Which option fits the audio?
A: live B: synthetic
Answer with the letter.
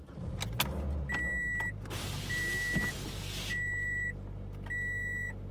A